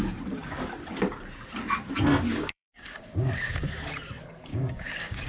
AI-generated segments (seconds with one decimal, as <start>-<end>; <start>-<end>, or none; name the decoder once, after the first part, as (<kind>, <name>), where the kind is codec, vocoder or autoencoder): 2.3-3.9 (codec, DAC); 4.5-5.3